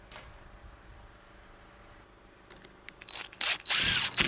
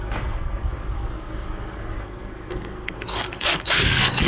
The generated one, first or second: second